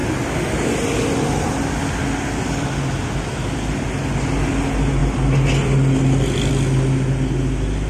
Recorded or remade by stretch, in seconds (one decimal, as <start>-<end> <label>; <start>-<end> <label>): 0.0-7.9 recorded